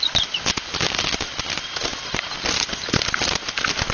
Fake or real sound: real